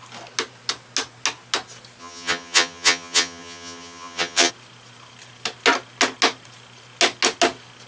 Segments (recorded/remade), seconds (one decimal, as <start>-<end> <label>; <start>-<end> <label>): 0.0-2.0 recorded; 2.0-4.5 remade; 4.5-7.9 recorded